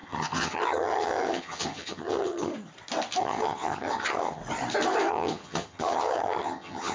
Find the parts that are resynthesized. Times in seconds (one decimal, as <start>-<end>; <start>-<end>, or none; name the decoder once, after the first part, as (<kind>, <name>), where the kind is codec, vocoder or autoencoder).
0.0-2.5 (vocoder, HiFi-GAN); 3.2-4.4; 5.1-6.9